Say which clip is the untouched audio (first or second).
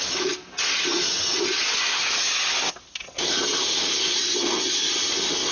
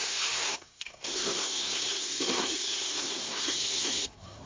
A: first